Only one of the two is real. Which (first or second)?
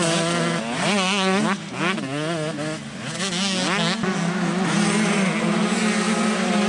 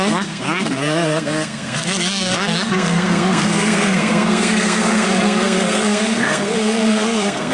first